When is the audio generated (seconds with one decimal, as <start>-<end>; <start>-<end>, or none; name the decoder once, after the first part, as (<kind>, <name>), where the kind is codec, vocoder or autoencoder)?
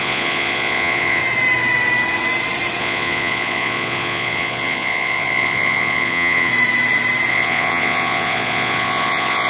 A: 0.0-1.2 (vocoder, Vocos); 2.8-6.5; 7.3-9.5